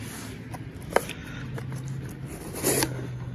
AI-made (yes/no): no